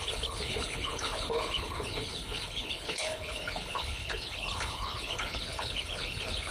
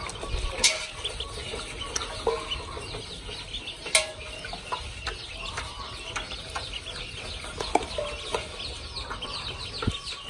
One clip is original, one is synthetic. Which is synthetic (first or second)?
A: first